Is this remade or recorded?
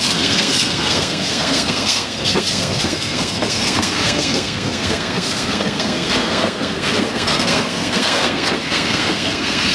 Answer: remade